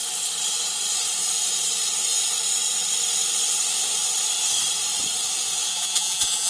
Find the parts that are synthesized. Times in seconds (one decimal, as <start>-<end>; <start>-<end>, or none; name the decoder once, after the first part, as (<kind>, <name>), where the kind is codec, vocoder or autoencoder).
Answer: 5.7-6.5 (vocoder, Vocos)